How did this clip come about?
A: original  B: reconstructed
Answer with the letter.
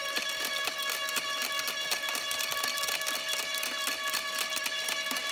A